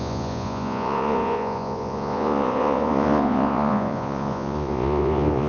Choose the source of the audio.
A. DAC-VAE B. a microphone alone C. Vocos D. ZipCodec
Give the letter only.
C